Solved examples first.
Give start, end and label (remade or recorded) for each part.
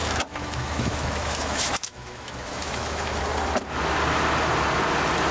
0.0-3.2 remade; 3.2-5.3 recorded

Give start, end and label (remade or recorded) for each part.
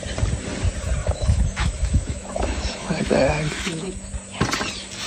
0.0-1.0 recorded; 1.0-4.1 remade; 4.1-5.1 recorded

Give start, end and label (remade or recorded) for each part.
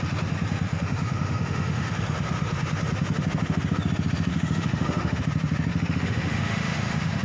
0.0-0.7 recorded; 0.7-1.9 remade; 1.9-4.3 recorded; 4.3-5.2 remade; 5.2-5.7 recorded; 5.7-7.2 remade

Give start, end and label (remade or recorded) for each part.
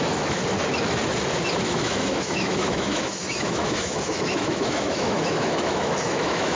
0.0-0.4 remade; 0.4-1.6 recorded; 1.6-6.6 remade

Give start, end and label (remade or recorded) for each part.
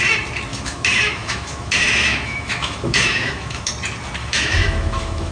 0.0-0.5 recorded; 0.5-3.7 remade; 3.7-4.2 recorded; 4.2-5.3 remade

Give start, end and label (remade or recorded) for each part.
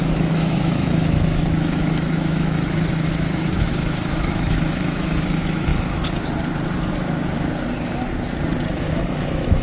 0.0-5.7 remade; 5.7-8.7 recorded; 8.7-9.6 remade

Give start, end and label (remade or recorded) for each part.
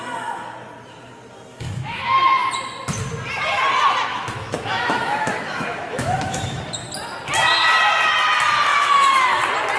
0.0-1.5 recorded; 1.5-2.0 remade; 2.0-4.1 recorded; 4.1-6.6 remade; 6.6-8.7 recorded; 8.7-9.4 remade; 9.4-9.8 recorded